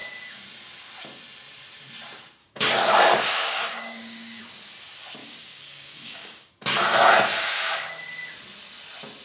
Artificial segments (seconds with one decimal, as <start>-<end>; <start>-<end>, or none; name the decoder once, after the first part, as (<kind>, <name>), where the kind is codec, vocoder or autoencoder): 2.4-4.4 (codec, DAC); 5.2-6.5; 7.3-7.9